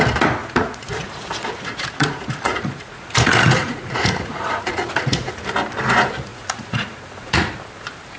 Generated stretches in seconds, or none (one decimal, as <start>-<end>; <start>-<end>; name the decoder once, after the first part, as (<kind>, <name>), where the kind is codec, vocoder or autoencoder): 0.4-5.3 (vocoder, Vocos); 6.3-7.5